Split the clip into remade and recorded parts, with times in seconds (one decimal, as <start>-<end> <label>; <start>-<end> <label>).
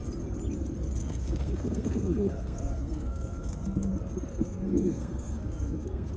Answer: 0.0-1.0 recorded; 1.0-3.9 remade; 3.9-4.3 recorded; 4.3-6.2 remade